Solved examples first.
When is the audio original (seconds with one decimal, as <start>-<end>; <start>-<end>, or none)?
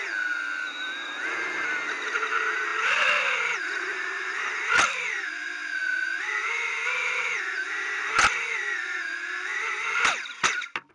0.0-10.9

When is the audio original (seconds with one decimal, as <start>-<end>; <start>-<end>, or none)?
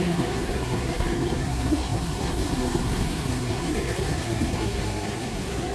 none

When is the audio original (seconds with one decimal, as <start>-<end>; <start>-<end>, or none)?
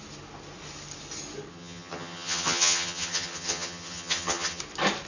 0.0-1.5; 4.6-5.1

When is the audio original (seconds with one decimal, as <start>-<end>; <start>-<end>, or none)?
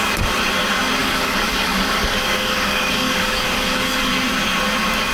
0.0-1.0; 4.1-5.1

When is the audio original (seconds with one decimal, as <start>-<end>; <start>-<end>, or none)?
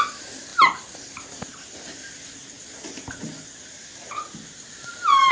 0.0-5.3